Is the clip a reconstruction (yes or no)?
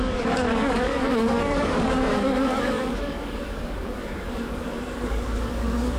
yes